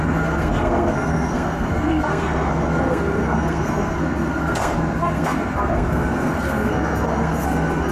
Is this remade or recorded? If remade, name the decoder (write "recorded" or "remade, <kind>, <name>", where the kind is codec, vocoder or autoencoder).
remade, codec, SNAC